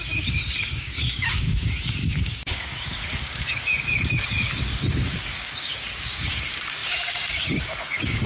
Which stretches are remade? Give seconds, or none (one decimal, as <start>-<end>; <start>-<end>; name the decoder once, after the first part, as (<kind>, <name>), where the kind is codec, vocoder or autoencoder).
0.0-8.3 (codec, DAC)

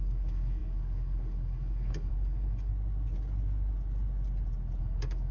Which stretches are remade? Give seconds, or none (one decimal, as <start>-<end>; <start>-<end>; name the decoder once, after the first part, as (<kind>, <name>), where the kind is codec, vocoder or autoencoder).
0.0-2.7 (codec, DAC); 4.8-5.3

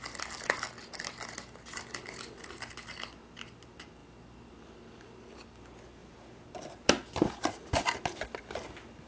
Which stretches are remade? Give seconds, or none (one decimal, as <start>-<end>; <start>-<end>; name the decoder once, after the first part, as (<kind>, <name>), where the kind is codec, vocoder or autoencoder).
none

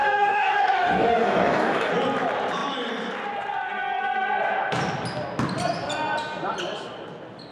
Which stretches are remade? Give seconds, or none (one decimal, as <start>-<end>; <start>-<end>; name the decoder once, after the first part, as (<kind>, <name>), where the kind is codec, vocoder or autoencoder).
0.0-1.9 (codec, DAC)

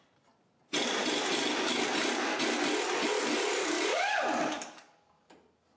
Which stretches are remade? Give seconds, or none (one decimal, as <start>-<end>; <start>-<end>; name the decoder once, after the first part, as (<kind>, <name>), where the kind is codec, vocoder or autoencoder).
3.6-5.3 (codec, DAC)

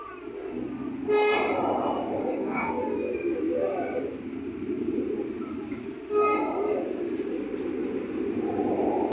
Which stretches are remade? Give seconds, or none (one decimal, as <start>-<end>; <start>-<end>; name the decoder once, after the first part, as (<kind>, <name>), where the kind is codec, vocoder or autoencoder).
2.2-2.8 (codec, DAC)

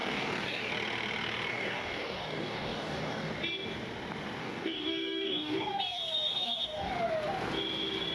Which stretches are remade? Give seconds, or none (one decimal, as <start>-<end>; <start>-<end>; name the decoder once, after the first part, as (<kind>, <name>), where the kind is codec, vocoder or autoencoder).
0.0-0.7 (codec, DAC); 1.5-3.3; 4.4-6.9